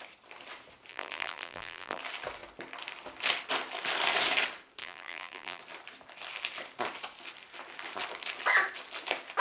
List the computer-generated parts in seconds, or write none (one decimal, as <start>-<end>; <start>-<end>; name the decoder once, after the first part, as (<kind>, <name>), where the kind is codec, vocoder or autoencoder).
0.9-2.0 (vocoder, BigVGAN v2); 4.8-5.6